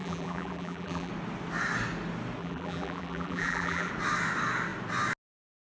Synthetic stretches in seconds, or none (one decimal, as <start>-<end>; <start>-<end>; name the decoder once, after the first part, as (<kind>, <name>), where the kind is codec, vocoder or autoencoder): 0.0-1.1 (vocoder, BigVGAN v2); 2.4-3.9